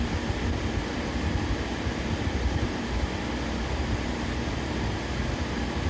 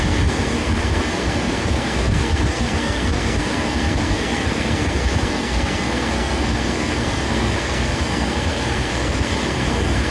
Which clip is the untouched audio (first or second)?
first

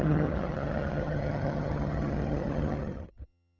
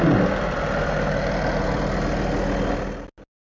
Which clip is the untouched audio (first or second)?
second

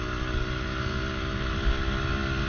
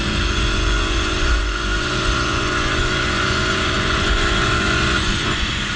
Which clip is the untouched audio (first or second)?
first